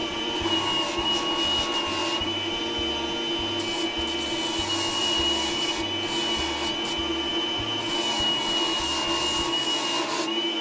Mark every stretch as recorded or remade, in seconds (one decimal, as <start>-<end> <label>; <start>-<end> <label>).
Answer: 0.0-0.8 remade; 0.8-2.0 recorded; 2.0-2.6 remade; 2.6-5.0 recorded; 5.0-5.7 remade; 5.7-10.6 recorded